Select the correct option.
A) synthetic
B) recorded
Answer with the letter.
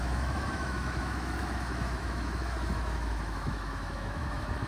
A